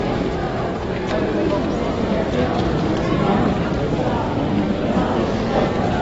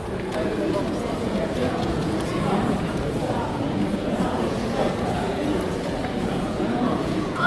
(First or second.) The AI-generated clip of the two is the second